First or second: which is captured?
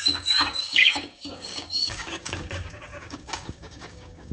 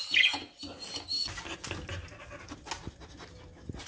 second